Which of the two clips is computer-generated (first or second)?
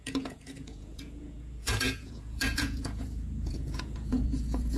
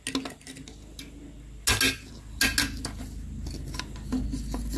first